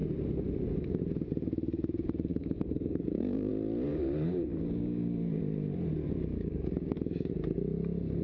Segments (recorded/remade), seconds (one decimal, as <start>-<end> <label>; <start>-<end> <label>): 0.0-2.3 recorded; 2.3-3.5 remade; 3.5-3.9 recorded; 3.9-5.4 remade; 5.4-6.0 recorded; 6.0-7.3 remade; 7.3-8.2 recorded

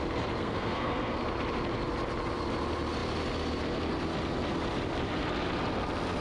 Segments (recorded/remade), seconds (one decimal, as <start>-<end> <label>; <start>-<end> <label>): 0.0-0.4 recorded; 0.4-1.2 remade; 1.2-6.2 recorded

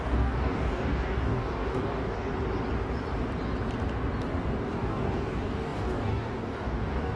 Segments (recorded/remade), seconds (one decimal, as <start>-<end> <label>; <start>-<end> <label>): 0.0-2.3 remade; 2.3-4.6 recorded; 4.6-7.2 remade

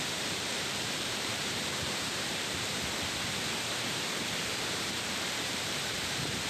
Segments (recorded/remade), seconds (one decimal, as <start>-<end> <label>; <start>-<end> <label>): 0.0-2.7 remade; 2.7-4.5 recorded; 4.5-6.5 remade

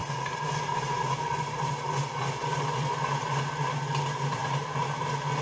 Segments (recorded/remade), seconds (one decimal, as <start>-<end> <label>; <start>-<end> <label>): 0.0-5.4 recorded

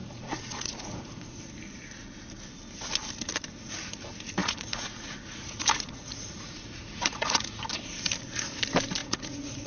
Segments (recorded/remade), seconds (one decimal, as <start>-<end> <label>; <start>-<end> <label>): 0.0-1.5 remade; 1.5-4.4 recorded; 4.4-7.7 remade; 7.7-9.0 recorded; 9.0-9.7 remade

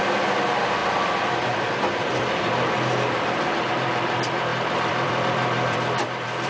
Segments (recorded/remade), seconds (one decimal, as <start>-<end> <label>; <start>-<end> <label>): 0.0-6.5 remade

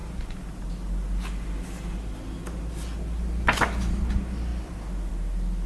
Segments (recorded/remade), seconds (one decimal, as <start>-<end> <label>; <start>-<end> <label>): 0.0-5.7 recorded